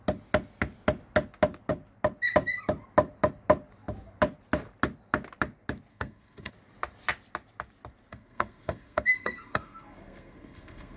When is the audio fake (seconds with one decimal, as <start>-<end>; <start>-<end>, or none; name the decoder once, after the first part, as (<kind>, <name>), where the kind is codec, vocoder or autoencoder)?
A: 5.9-6.5 (codec, SNAC); 8.1-11.0